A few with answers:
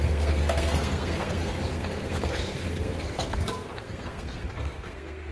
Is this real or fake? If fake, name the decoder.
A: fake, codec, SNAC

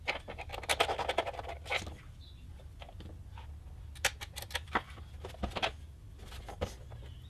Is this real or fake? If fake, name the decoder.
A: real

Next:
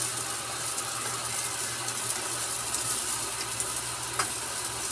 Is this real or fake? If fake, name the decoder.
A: real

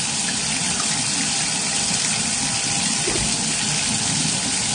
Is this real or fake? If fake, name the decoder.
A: real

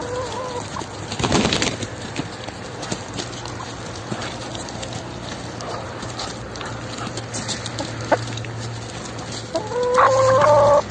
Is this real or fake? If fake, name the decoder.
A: real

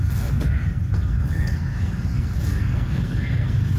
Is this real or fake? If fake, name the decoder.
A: fake, codec, SNAC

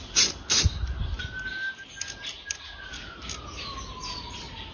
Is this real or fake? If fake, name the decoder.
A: real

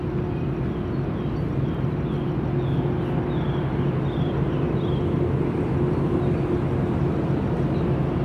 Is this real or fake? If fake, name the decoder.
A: real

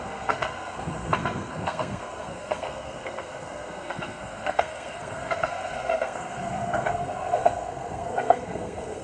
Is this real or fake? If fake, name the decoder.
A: fake, codec, SNAC